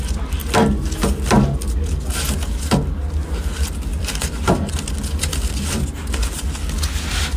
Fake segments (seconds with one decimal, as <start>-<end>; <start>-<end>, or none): 3.9-4.7